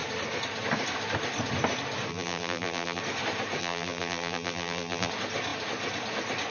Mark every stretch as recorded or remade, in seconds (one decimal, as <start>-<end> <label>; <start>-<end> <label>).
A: 0.0-2.1 recorded; 2.1-3.0 remade; 3.0-3.6 recorded; 3.6-5.1 remade; 5.1-6.5 recorded